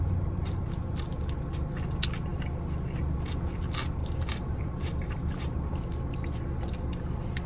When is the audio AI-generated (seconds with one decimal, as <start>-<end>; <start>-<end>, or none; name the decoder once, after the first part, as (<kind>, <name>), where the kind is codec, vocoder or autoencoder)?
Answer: 4.0-5.6 (vocoder, BigVGAN v2)